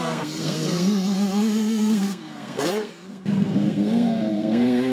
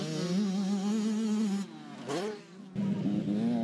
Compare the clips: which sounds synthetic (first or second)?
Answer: first